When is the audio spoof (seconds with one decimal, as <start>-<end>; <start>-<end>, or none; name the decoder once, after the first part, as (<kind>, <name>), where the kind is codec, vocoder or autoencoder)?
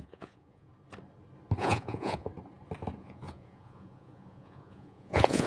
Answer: 0.0-0.7 (vocoder, Vocos); 1.6-2.3; 3.0-5.5